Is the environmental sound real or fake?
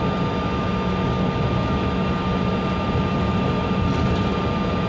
real